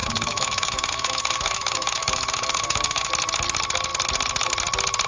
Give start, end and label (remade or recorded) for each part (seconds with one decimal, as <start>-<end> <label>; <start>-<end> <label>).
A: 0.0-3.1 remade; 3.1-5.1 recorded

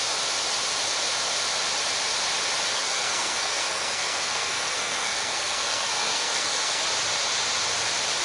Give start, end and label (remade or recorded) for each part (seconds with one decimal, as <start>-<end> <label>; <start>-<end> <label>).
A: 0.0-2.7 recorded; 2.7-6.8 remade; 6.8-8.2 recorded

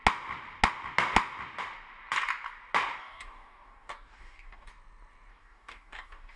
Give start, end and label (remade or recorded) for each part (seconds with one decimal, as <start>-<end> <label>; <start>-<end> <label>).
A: 0.0-3.0 recorded; 3.0-4.7 remade; 4.7-5.3 recorded; 5.3-6.4 remade

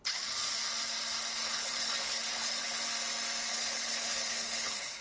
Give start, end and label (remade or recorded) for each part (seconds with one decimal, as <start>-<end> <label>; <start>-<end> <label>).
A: 0.0-1.3 recorded; 1.3-2.8 remade; 2.8-3.5 recorded; 3.5-5.0 remade

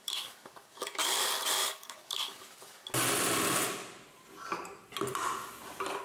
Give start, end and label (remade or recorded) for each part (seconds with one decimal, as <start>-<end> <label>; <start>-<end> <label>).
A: 0.0-1.0 remade; 1.0-1.6 recorded; 1.6-2.8 remade; 2.8-6.0 recorded

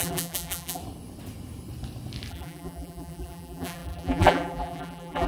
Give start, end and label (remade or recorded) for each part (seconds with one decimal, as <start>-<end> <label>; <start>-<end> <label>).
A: 0.0-0.8 remade; 0.8-2.3 recorded; 2.3-5.3 remade